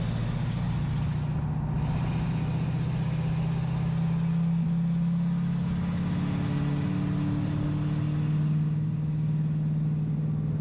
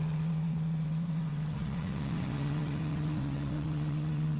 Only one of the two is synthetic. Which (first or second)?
second